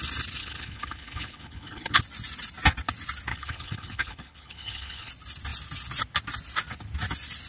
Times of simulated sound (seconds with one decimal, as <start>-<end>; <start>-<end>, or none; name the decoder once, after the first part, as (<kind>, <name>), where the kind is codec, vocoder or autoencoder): 0.4-2.0 (codec, HILCodec); 3.3-5.1